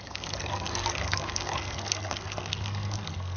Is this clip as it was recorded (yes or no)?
no